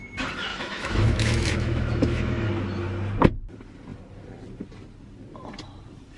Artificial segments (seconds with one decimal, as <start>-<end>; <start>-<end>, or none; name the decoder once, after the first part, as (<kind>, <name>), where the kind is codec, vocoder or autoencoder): 0.5-2.5 (autoencoder, DAC-VAE)